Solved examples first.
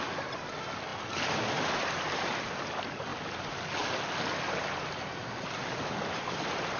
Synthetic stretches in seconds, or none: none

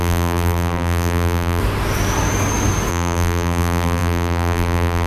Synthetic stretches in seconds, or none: 0.0-1.6; 2.9-5.1

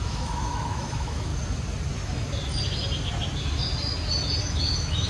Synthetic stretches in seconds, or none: 0.0-1.3; 4.4-5.1